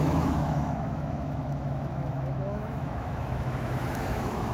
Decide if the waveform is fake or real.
fake